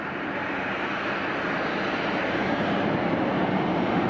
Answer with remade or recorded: recorded